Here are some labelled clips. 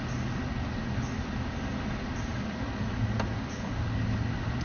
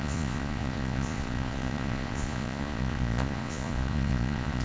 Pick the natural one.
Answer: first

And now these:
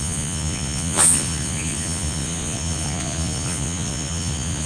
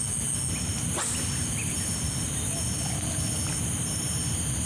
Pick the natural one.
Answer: second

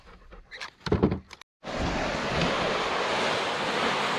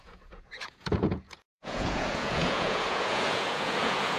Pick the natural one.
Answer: first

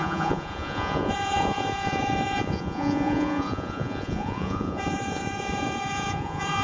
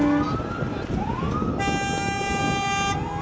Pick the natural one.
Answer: second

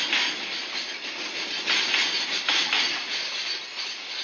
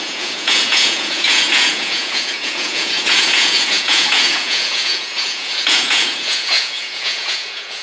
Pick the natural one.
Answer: first